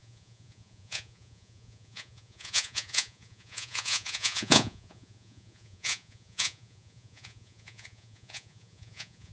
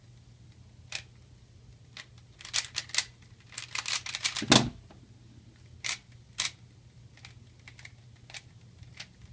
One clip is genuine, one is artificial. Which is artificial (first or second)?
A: first